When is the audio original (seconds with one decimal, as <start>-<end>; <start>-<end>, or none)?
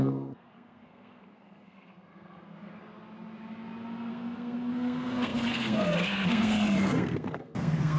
2.7-4.1